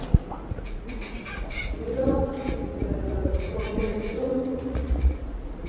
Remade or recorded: remade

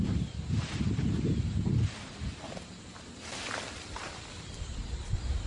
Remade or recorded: recorded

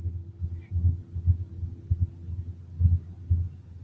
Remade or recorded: recorded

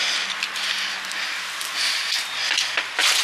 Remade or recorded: recorded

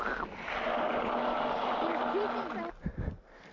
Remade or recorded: recorded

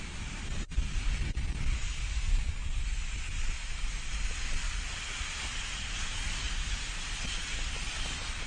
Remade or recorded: recorded